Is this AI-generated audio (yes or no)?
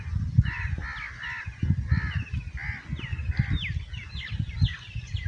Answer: no